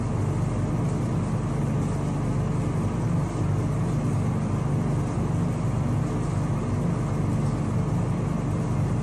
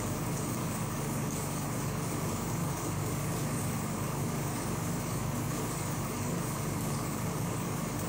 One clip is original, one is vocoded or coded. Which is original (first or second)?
first